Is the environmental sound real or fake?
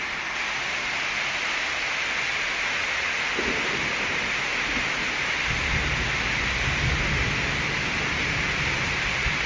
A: real